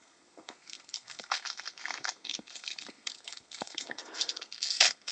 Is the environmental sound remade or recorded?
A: remade